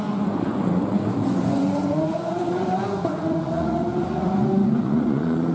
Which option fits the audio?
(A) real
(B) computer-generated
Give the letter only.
B